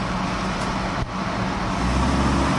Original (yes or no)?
yes